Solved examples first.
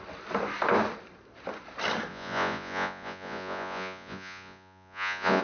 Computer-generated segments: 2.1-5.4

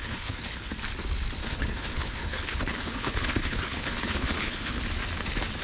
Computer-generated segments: 0.0-0.7; 1.4-4.8

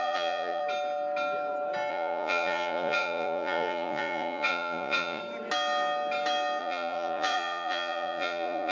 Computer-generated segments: 0.0-0.6; 1.9-5.2; 6.6-8.7

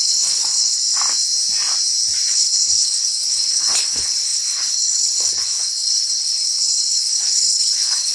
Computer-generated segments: 0.0-0.8; 2.3-8.1

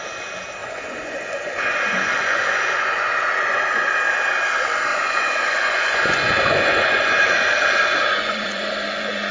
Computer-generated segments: 0.6-3.9; 4.9-9.3

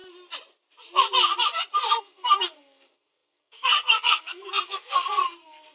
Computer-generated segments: 1.9-5.7

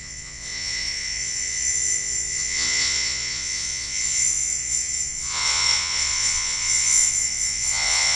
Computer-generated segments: 0.0-8.1

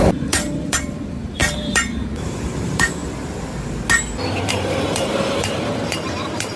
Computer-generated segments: 0.0-3.0; 4.5-6.6